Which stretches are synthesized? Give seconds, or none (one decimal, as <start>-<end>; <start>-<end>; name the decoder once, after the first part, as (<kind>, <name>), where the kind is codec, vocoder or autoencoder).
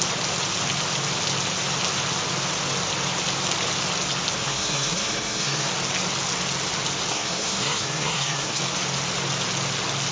4.4-5.7 (codec, SNAC); 7.1-8.6